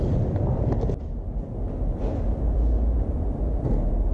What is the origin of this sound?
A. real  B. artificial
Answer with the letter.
A